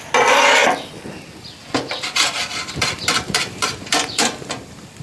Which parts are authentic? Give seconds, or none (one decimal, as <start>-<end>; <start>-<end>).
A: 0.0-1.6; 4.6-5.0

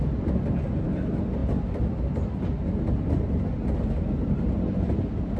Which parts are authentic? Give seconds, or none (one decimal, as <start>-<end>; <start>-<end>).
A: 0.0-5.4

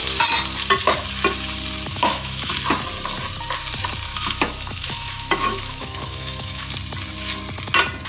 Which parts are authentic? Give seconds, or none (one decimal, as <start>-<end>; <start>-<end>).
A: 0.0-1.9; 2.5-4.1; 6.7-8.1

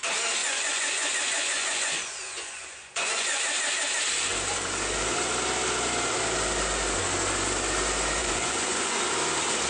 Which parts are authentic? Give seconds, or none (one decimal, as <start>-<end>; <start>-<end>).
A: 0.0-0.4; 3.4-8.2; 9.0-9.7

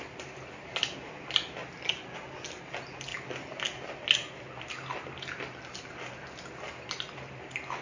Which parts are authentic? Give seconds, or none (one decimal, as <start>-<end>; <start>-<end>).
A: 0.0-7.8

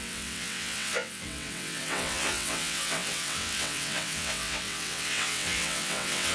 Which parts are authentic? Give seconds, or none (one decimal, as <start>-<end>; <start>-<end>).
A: none

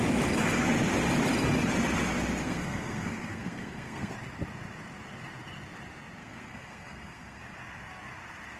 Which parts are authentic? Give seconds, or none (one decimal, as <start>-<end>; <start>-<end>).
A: 0.0-2.4; 4.1-6.2; 7.4-8.6

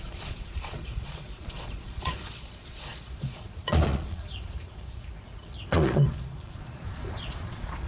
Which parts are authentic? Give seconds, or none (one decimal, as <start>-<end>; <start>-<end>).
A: none